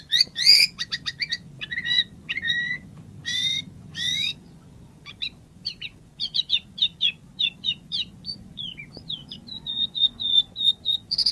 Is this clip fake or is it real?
fake